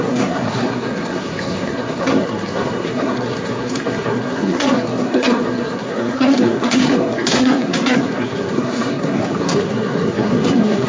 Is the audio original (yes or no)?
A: no